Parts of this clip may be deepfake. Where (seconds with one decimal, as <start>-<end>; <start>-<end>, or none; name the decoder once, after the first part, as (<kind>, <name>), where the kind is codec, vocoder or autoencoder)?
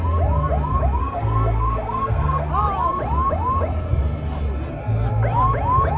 1.0-2.5 (codec, SNAC)